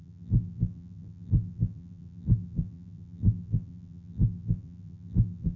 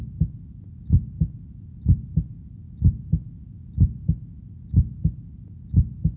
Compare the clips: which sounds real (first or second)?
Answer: second